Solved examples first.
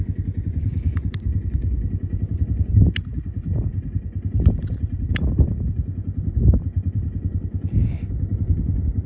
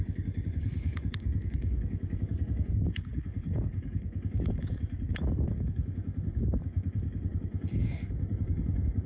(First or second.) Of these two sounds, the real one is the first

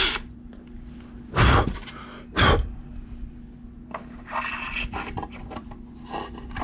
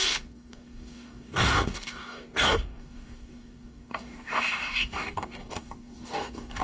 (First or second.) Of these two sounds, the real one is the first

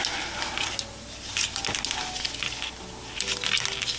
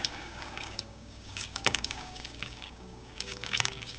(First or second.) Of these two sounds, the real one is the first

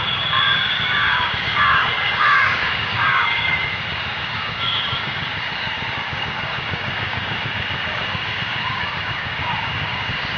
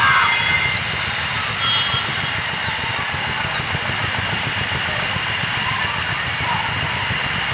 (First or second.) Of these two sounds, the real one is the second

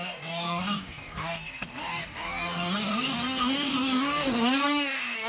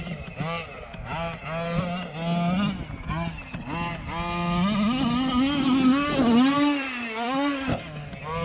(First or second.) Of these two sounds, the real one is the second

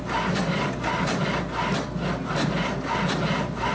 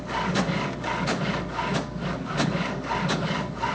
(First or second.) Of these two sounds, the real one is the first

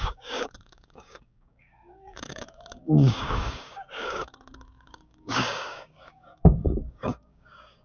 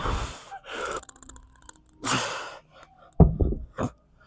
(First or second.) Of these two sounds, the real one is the second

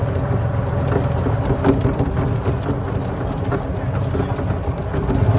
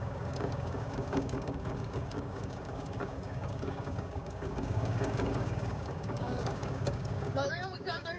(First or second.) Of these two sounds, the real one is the first